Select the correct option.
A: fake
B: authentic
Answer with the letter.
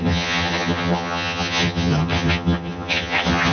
A